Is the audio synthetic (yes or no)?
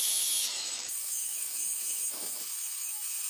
yes